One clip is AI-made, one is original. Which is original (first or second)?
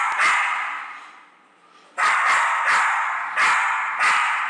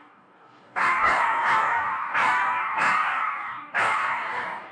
first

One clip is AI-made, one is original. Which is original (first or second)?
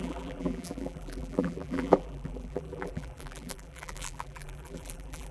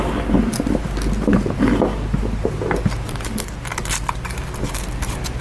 second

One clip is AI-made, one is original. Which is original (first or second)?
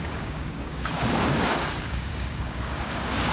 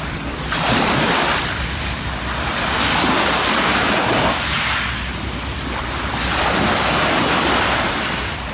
second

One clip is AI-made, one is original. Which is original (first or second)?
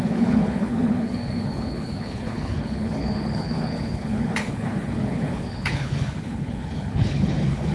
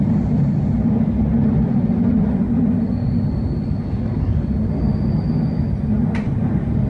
second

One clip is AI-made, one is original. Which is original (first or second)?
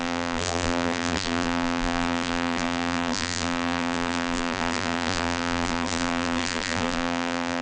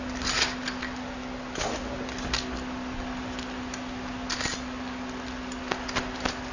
second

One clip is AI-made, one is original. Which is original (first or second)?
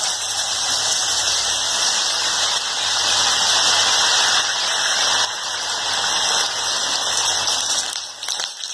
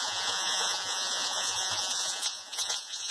first